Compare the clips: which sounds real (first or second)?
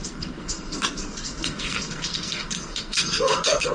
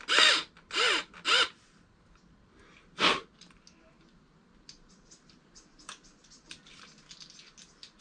second